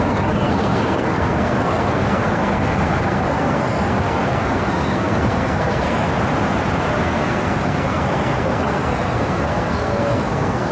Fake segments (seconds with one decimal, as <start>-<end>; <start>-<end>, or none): 0.0-6.1; 7.0-10.7